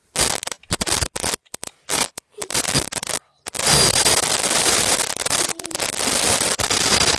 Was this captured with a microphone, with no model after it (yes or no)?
yes